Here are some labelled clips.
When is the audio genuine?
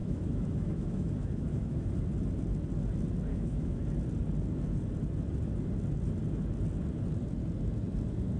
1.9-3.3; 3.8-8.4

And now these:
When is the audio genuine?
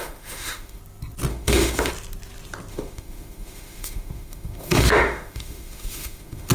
0.8-1.3; 1.9-2.7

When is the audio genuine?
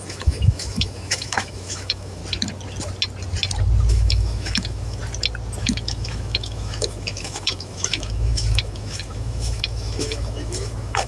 2.2-3.9; 5.0-5.6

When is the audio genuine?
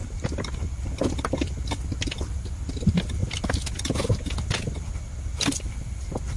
0.0-6.4